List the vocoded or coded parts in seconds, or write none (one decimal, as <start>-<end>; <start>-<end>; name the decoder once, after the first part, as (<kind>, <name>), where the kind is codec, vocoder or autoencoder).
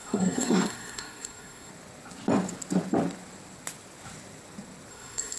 0.0-1.7 (codec, SNAC); 4.9-5.4